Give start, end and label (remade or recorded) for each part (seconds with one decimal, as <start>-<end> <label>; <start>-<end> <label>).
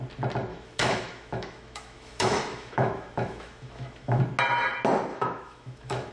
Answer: 0.0-0.5 recorded; 0.5-4.2 remade; 4.2-5.1 recorded; 5.1-6.1 remade